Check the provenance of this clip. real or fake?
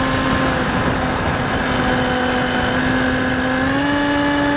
real